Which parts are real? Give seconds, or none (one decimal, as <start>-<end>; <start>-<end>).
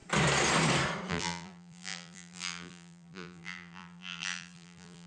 0.0-1.1